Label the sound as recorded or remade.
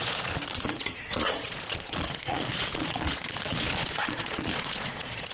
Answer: remade